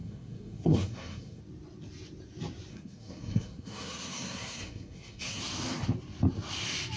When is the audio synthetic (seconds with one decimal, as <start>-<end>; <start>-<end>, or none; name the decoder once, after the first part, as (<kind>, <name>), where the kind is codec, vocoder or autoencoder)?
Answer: 0.0-1.4 (codec, SNAC); 2.7-5.4